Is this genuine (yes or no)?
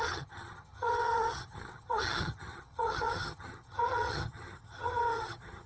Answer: no